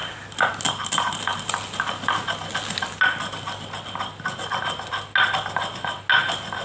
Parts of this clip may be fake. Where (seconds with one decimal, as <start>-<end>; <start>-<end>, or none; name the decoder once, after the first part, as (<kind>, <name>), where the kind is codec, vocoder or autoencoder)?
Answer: none